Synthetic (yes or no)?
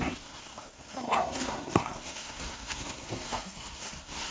yes